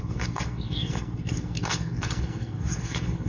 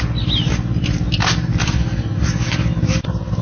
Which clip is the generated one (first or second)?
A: first